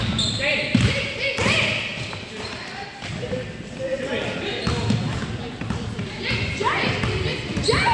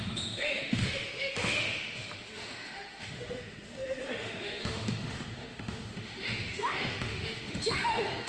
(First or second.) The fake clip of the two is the second